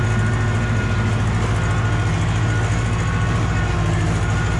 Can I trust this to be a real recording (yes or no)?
yes